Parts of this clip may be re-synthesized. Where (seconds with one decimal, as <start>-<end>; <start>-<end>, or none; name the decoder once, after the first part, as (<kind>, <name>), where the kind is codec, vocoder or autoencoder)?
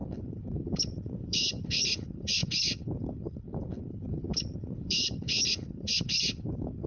0.0-6.9 (codec, HILCodec)